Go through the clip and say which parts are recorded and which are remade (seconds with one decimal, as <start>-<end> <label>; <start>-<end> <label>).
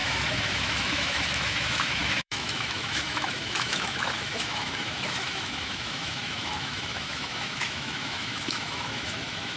0.0-9.6 remade